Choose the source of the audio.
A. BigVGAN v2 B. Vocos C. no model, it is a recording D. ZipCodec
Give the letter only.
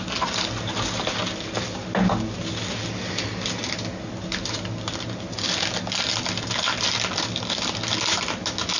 C